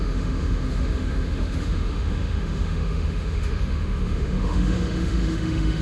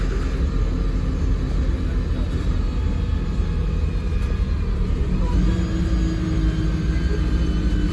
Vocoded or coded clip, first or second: first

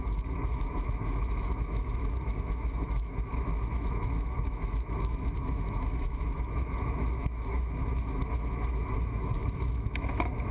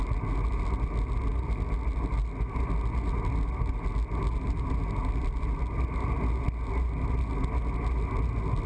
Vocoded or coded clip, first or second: first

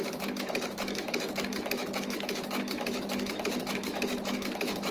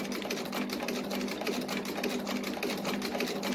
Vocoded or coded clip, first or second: first